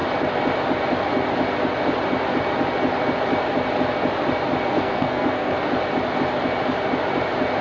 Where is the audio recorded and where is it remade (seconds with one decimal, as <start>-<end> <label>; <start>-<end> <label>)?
0.0-4.7 recorded; 4.7-5.5 remade; 5.5-7.6 recorded